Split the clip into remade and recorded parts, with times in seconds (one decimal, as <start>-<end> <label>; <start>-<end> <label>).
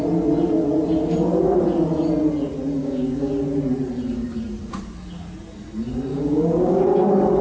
0.0-2.8 recorded; 2.8-3.3 remade; 3.3-6.1 recorded; 6.1-6.8 remade; 6.8-7.4 recorded